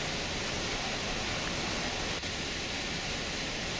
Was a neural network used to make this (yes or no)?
no